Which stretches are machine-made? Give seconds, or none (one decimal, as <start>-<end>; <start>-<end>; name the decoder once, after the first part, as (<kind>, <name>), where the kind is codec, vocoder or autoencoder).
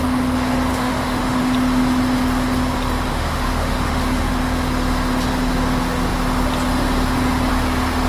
0.7-1.4 (autoencoder, DAC-VAE); 3.1-4.3